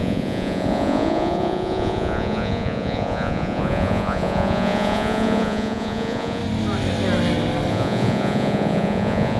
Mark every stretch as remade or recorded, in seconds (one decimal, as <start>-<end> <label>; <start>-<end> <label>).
0.0-6.4 remade; 6.4-7.7 recorded; 7.7-9.4 remade